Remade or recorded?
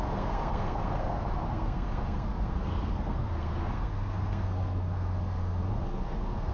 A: remade